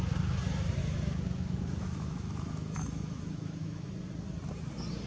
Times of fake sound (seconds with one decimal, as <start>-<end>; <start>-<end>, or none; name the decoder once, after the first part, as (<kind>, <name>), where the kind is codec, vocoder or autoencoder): 0.8-3.9 (autoencoder, DAC-VAE)